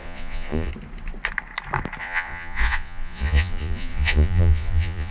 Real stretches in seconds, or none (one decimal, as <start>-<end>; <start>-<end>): 0.7-2.0